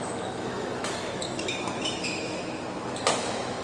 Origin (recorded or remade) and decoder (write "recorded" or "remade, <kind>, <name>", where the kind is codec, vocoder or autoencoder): remade, autoencoder, DAC-VAE